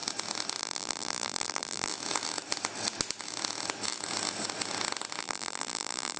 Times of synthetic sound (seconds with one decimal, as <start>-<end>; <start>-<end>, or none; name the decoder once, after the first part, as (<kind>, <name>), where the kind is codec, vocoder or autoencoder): 0.6-1.9 (vocoder, BigVGAN v2); 5.2-6.2